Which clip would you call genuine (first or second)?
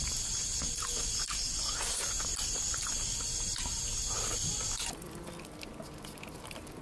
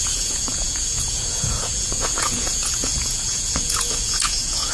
first